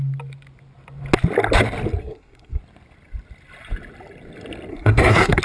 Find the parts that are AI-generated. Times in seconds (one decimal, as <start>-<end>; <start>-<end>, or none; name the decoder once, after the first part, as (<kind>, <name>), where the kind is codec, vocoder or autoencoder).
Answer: 2.0-2.6 (codec, SNAC); 4.7-5.4